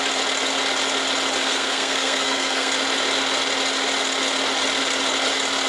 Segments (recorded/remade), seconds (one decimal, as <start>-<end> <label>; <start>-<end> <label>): 0.0-1.4 recorded; 1.4-2.7 remade; 2.7-5.7 recorded